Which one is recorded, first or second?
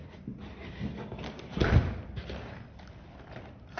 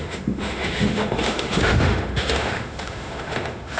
first